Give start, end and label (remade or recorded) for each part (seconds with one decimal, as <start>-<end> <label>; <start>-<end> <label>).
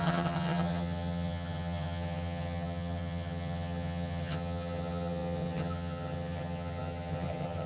0.0-7.7 remade